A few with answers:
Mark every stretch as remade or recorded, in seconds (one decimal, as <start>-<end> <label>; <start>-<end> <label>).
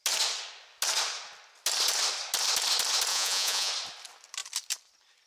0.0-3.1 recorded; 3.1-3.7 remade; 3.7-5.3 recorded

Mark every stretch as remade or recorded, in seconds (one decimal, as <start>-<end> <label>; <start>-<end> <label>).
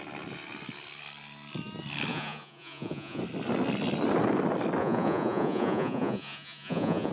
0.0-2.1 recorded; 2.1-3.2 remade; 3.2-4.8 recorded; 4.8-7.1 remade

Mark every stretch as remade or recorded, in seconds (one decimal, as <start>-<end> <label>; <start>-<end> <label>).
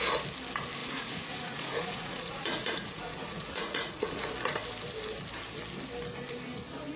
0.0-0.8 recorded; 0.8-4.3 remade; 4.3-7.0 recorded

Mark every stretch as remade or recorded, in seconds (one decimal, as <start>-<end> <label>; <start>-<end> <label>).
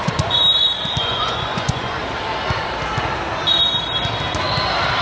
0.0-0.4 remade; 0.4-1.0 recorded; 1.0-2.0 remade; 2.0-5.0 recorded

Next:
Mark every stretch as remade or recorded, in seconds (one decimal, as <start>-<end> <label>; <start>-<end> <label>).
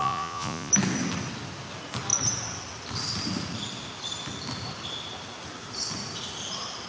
0.0-0.7 remade; 0.7-6.9 recorded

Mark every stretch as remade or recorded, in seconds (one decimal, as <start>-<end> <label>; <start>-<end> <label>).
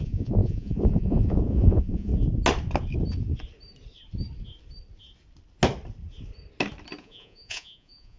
0.0-2.1 remade; 2.1-7.0 recorded; 7.0-8.2 remade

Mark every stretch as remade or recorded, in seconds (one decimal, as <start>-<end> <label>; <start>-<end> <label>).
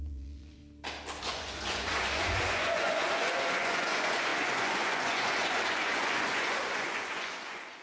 0.0-0.6 remade; 0.6-1.2 recorded; 1.2-7.8 remade